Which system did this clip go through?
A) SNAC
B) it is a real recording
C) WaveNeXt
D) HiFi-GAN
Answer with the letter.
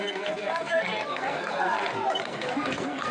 A